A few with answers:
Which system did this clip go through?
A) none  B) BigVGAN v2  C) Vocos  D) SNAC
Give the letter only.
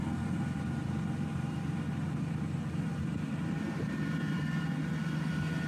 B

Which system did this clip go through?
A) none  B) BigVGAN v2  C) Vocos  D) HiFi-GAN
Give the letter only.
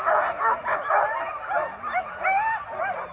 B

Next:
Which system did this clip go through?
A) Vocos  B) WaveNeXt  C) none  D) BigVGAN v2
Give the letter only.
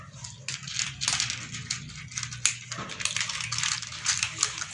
C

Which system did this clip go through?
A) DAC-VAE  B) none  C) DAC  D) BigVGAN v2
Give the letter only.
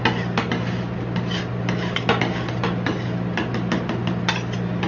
B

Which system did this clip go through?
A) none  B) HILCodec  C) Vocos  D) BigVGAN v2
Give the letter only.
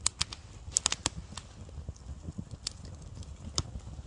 A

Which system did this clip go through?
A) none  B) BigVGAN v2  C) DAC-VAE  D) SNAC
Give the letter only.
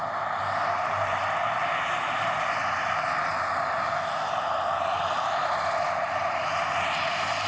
A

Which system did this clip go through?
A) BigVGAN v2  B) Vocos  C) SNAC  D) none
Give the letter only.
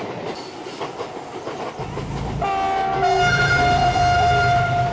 D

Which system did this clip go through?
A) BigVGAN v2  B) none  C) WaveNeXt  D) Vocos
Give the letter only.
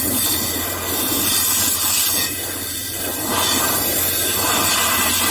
A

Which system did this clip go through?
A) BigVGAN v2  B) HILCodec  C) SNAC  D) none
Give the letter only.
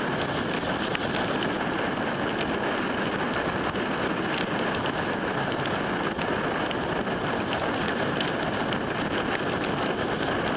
D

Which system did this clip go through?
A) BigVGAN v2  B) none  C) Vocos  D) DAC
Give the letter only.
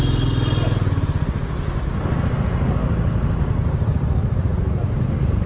B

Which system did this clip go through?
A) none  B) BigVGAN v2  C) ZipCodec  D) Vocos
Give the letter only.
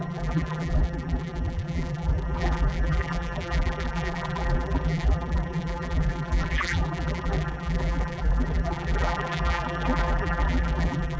B